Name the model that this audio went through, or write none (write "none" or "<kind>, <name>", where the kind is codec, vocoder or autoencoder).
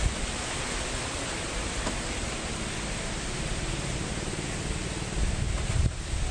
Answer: none